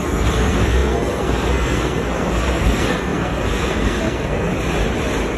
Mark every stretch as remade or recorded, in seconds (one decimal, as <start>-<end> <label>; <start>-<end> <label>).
0.0-4.5 remade; 4.5-5.4 recorded